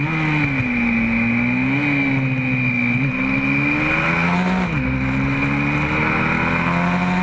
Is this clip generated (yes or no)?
no